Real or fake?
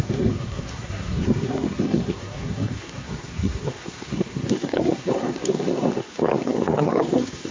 fake